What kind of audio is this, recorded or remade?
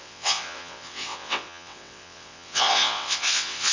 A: remade